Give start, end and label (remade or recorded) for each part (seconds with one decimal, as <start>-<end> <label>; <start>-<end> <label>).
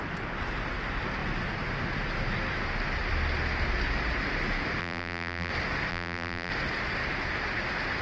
0.0-4.8 recorded; 4.8-5.5 remade; 5.5-5.9 recorded; 5.9-6.5 remade; 6.5-8.0 recorded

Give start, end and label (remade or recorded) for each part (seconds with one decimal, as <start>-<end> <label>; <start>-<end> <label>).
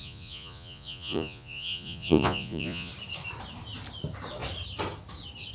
0.0-2.9 remade; 2.9-5.5 recorded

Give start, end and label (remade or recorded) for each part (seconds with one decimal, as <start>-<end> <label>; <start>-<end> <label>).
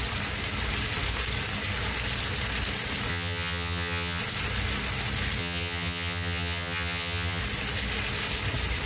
0.0-3.1 recorded; 3.1-4.2 remade; 4.2-5.4 recorded; 5.4-7.4 remade; 7.4-8.9 recorded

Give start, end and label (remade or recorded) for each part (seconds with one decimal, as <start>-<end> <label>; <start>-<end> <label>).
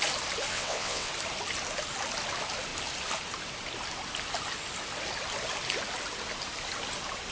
0.0-0.5 recorded; 0.5-1.1 remade; 1.1-7.3 recorded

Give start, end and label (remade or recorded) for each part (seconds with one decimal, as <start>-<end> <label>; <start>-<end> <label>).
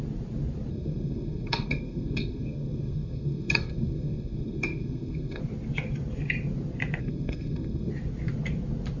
0.0-0.7 recorded; 0.7-5.4 remade; 5.4-7.0 recorded; 7.0-7.9 remade; 7.9-9.0 recorded